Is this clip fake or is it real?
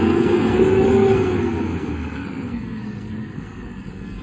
fake